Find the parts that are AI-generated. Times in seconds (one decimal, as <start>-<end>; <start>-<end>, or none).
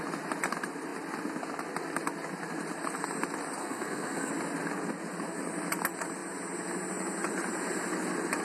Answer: 3.6-4.3